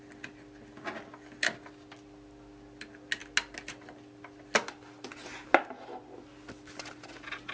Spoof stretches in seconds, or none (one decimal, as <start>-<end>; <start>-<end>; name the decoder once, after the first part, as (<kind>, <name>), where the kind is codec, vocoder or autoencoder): none